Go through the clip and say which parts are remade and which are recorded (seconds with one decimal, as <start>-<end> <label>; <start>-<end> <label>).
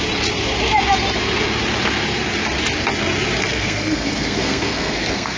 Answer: 0.0-3.5 recorded; 3.5-5.4 remade